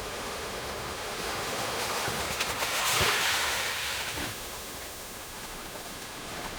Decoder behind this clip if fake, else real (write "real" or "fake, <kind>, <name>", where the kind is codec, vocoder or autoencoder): fake, autoencoder, DAC-VAE